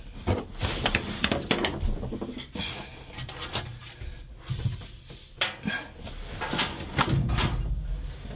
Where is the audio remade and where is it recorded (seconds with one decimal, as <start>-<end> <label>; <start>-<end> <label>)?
0.0-8.4 recorded